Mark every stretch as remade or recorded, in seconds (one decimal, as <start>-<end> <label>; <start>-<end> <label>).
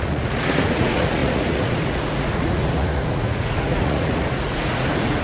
0.0-5.2 remade